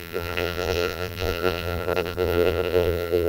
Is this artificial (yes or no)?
yes